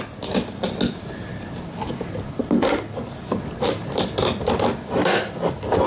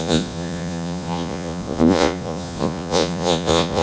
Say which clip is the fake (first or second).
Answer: second